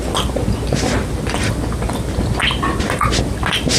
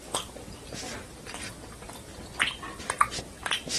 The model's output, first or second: second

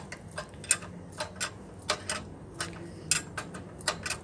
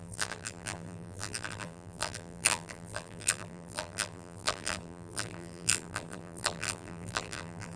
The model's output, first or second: second